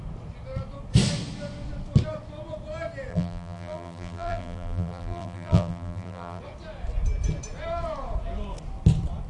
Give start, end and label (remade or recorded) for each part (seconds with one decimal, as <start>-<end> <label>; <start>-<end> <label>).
0.0-3.1 recorded; 3.1-6.4 remade; 6.4-9.3 recorded